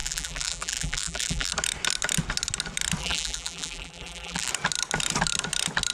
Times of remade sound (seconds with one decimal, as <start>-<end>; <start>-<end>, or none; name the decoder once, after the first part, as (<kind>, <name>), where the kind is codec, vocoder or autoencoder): 0.0-1.5 (vocoder, BigVGAN v2); 3.0-4.5